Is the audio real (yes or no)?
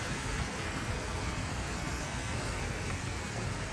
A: no